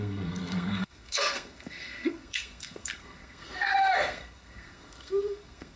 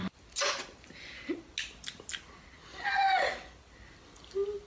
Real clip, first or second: second